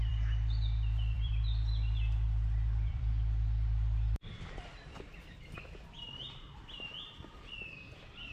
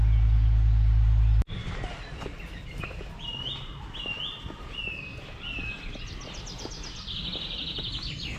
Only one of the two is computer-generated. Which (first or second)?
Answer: first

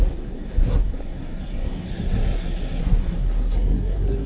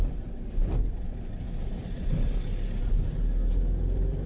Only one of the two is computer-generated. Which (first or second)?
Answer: first